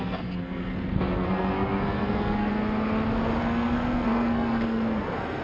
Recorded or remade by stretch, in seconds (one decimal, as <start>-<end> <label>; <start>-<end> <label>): 0.0-2.5 remade; 2.5-3.4 recorded; 3.4-5.4 remade